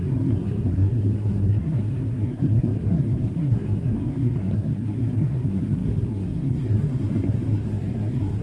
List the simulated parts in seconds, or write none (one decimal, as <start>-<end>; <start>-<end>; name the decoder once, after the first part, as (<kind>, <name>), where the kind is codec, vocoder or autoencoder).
0.0-8.4 (codec, SNAC)